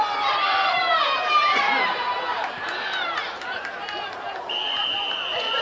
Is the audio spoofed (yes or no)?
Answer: yes